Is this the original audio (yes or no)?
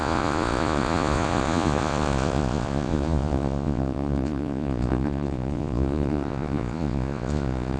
no